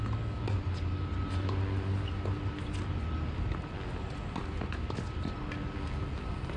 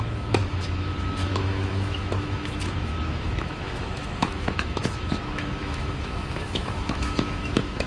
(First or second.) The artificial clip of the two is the second